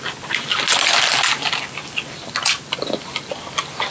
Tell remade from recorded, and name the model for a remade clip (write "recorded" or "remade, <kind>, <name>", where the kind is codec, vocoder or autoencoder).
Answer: recorded